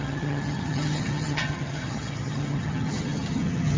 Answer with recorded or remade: remade